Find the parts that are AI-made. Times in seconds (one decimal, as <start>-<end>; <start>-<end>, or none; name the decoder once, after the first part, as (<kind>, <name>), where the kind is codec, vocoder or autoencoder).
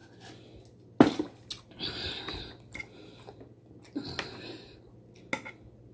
none